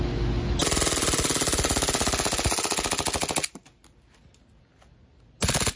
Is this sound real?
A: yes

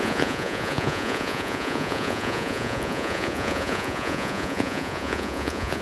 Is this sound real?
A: no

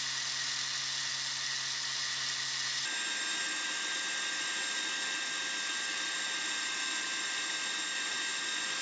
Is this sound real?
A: yes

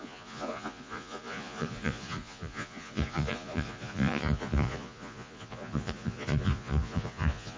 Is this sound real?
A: no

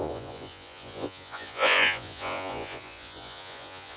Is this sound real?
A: no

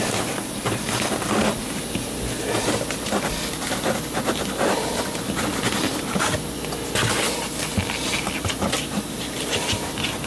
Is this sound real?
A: yes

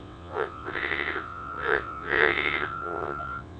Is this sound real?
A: no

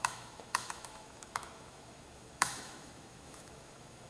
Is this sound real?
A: no